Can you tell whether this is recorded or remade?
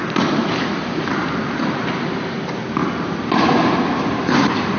recorded